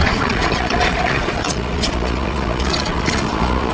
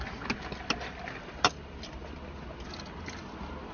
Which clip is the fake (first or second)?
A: first